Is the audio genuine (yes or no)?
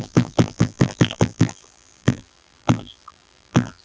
no